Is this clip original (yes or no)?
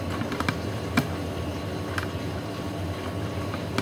yes